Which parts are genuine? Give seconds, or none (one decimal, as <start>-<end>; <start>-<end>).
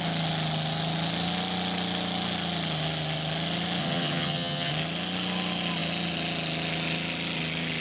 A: 0.0-3.8; 4.7-7.8